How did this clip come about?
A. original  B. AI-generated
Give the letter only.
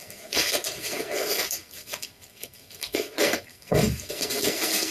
B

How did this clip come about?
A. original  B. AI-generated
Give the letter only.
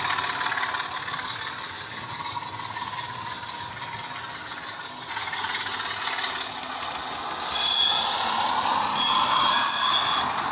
A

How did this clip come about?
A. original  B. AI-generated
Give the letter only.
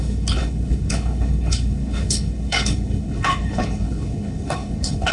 B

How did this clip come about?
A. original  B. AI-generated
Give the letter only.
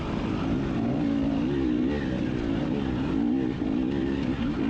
A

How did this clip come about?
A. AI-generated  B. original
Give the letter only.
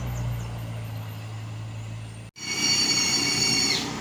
B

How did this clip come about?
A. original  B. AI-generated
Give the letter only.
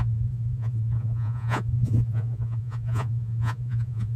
B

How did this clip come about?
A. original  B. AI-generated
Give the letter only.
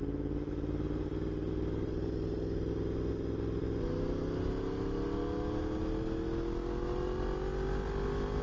A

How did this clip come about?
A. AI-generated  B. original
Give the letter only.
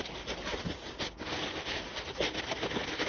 B